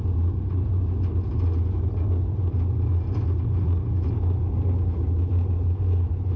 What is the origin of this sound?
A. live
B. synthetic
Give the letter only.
A